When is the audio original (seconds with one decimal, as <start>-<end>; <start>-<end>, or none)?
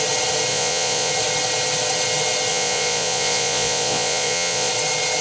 0.0-0.5; 1.1-2.5; 4.7-5.2